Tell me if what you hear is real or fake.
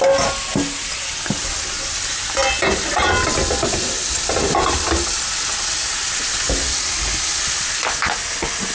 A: real